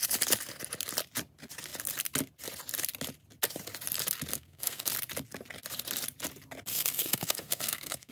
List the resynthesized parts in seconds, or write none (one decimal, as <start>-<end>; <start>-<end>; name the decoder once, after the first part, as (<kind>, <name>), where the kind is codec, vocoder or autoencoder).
4.3-4.9 (codec, SNAC); 6.7-8.1